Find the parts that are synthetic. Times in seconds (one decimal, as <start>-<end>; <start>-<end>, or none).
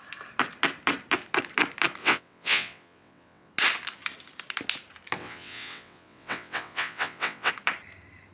2.0-3.5; 5.2-7.5